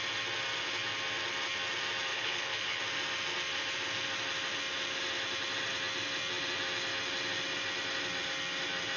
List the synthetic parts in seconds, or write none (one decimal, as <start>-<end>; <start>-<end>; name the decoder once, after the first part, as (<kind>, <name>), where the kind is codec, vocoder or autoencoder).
2.1-2.8 (codec, HILCodec)